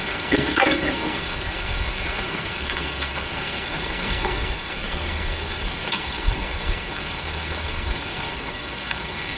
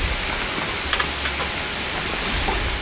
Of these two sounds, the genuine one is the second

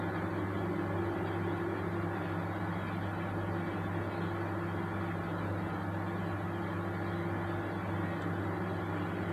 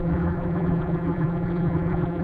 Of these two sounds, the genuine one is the first